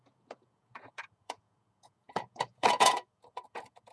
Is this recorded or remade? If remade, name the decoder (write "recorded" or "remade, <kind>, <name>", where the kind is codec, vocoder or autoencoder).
remade, vocoder, Vocos